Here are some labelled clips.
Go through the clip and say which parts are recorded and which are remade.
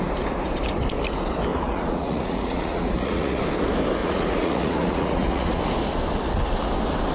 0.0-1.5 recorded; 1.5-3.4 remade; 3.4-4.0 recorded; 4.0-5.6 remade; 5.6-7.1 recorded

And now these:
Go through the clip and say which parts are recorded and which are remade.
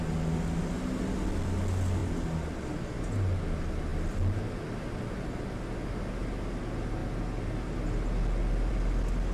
0.0-9.3 recorded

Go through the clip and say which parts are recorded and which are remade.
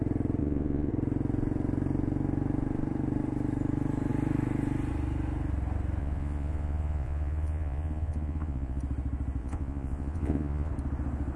0.0-0.4 recorded; 0.4-0.9 remade; 0.9-6.0 recorded; 6.0-8.8 remade; 8.8-9.4 recorded; 9.4-10.7 remade; 10.7-11.4 recorded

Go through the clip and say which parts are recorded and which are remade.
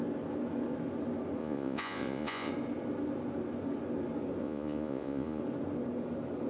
0.0-1.4 recorded; 1.4-2.5 remade; 2.5-4.4 recorded; 4.4-5.4 remade; 5.4-6.5 recorded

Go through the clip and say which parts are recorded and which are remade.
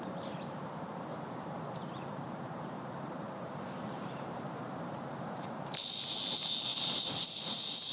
0.0-5.8 remade; 5.8-6.3 recorded; 6.3-7.9 remade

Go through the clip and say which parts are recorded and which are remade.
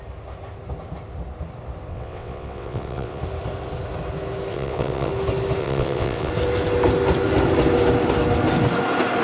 0.0-1.9 recorded; 1.9-3.2 remade; 3.2-4.5 recorded; 4.5-5.1 remade; 5.1-5.6 recorded; 5.6-6.3 remade; 6.3-9.2 recorded